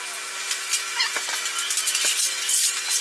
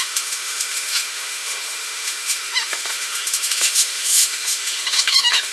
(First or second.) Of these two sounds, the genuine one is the first